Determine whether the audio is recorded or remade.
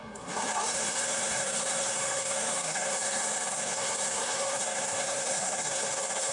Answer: remade